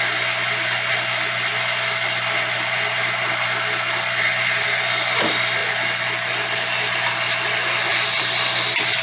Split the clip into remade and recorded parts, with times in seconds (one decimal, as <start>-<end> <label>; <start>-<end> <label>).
0.0-9.0 remade